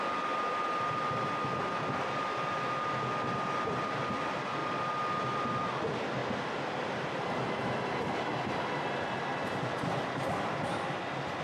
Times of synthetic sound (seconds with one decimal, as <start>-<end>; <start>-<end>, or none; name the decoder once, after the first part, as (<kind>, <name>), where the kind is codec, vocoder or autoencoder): none

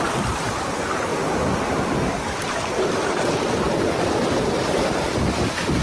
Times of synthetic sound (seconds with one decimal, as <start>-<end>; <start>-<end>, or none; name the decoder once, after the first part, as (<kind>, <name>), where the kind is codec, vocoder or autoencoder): 1.1-3.8 (vocoder, BigVGAN v2)

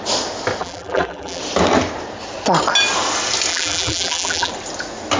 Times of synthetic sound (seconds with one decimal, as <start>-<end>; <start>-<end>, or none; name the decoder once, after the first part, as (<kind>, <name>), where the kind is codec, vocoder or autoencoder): 0.6-1.4 (vocoder, BigVGAN v2); 3.5-4.5

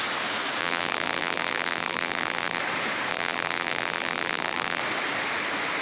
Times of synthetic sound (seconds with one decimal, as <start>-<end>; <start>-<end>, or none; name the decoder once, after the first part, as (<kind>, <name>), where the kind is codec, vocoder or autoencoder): 0.6-2.6 (vocoder, BigVGAN v2); 3.1-4.8